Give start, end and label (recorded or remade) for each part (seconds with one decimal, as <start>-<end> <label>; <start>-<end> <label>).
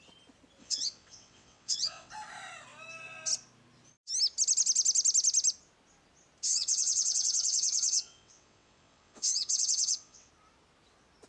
0.0-0.6 recorded; 0.6-2.1 remade; 2.1-6.5 recorded; 6.5-10.3 remade; 10.3-11.3 recorded